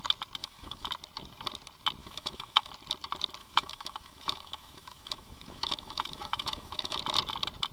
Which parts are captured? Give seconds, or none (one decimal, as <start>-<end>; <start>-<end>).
0.0-0.4; 0.9-2.0; 2.7-3.4; 7.0-7.7